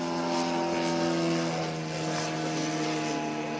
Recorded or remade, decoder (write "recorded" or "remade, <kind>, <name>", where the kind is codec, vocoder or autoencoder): recorded